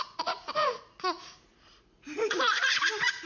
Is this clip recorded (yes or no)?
no